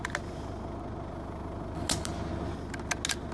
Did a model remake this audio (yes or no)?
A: no